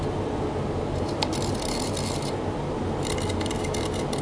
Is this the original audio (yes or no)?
yes